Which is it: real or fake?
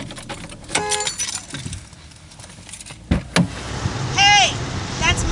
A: real